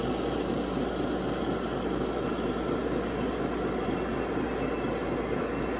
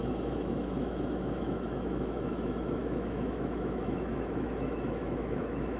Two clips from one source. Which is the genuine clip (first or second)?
first